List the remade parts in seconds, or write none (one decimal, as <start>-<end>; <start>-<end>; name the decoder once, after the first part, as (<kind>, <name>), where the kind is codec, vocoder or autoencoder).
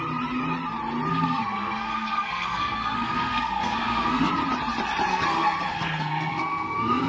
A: 1.1-4.3 (codec, SNAC); 5.1-7.1